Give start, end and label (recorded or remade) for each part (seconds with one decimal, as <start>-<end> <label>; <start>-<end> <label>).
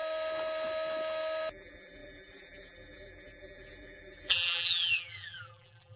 0.0-1.5 recorded; 1.5-6.0 remade